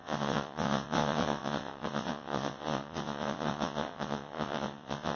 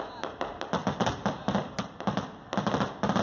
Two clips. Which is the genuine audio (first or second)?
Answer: second